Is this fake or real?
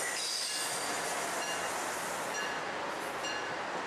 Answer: real